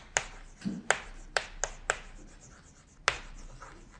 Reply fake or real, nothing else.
real